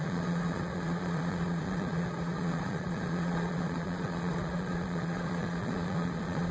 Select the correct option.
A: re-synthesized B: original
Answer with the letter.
A